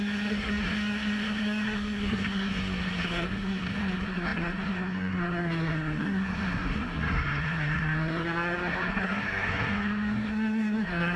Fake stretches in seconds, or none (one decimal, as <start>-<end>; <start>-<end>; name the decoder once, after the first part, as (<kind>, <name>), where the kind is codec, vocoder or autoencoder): 0.0-11.2 (codec, SNAC)